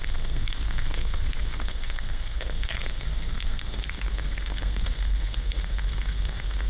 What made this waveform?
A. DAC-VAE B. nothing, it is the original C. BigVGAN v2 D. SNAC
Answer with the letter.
D